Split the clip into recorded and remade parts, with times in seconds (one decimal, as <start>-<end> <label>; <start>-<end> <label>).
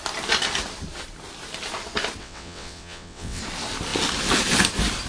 0.0-2.2 recorded; 2.2-3.4 remade; 3.4-5.1 recorded